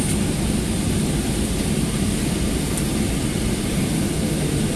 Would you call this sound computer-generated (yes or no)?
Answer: no